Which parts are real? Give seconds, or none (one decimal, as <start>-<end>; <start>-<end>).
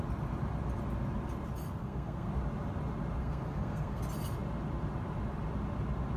0.0-1.8; 2.3-3.2; 4.0-6.2